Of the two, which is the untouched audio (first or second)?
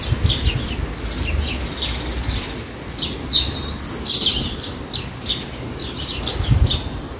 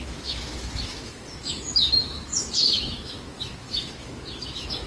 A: first